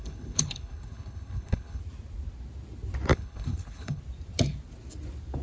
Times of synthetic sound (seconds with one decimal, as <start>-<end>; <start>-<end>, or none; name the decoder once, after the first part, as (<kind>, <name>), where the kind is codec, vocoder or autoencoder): 0.0-1.8 (codec, HILCodec); 3.1-4.0

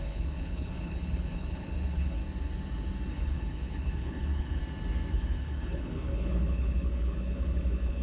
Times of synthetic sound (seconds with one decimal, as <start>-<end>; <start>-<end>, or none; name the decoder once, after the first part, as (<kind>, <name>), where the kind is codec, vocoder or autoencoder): 0.0-2.2 (codec, HILCodec); 3.1-4.6; 5.1-8.0

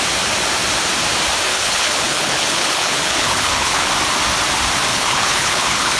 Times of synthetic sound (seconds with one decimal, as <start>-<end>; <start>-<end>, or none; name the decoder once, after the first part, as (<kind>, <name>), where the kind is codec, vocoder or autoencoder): 1.5-3.9 (codec, HILCodec); 4.9-6.0

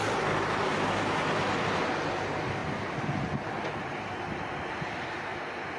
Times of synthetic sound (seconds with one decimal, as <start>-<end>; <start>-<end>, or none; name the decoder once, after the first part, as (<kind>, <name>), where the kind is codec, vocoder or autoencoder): none

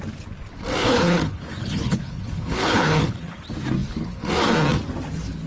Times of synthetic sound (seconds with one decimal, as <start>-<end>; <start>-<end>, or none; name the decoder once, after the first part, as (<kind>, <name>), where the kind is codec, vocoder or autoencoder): 0.8-3.4 (codec, HILCodec); 3.8-4.3